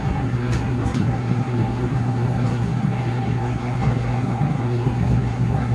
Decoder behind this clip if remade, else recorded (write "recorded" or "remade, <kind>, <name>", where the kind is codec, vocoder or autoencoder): remade, codec, SNAC